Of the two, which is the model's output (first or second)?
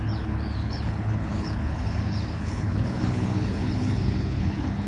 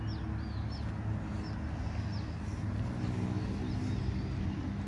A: first